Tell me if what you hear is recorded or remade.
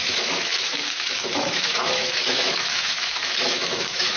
remade